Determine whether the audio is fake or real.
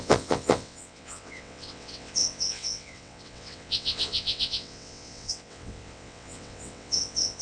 fake